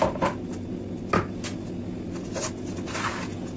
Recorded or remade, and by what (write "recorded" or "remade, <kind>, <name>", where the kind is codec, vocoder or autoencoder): recorded